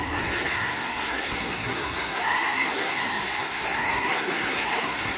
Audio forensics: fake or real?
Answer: fake